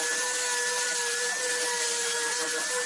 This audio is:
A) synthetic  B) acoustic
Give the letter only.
B